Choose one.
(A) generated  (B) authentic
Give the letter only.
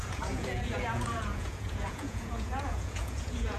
A